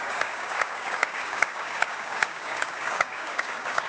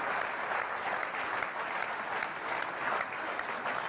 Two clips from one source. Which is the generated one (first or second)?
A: first